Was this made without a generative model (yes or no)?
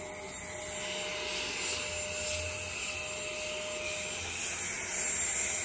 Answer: yes